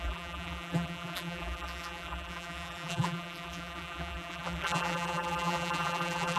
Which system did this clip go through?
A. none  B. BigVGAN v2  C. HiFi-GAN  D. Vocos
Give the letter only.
B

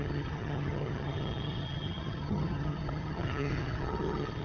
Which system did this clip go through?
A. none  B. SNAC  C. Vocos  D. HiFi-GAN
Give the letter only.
D